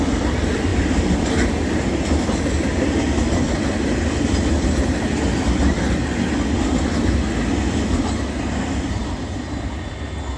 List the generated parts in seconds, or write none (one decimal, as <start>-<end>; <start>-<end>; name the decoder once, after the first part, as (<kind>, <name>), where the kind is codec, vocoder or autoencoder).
none

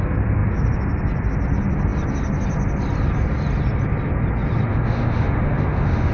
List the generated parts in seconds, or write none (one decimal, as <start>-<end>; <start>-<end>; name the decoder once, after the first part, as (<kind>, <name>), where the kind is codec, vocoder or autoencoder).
4.7-6.1 (autoencoder, DAC-VAE)